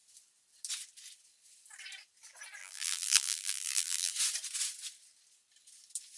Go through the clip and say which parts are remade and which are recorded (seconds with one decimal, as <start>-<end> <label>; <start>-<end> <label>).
0.0-2.6 recorded; 2.6-4.1 remade; 4.1-6.2 recorded